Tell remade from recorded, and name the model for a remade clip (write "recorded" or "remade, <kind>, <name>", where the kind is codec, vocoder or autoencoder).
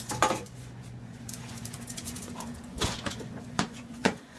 remade, vocoder, Vocos